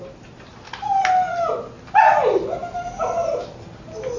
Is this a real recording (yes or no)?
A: yes